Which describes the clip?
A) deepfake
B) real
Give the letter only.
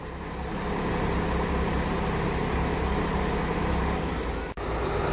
B